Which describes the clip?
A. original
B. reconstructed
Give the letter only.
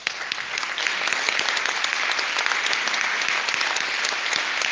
A